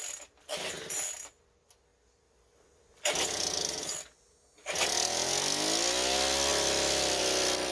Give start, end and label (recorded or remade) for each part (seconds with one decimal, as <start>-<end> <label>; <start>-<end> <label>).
0.0-7.7 recorded